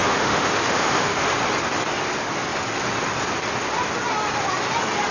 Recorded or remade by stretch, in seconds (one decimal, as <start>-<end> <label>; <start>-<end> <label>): 0.0-1.3 remade; 1.3-5.1 recorded